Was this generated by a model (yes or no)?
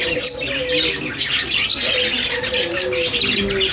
no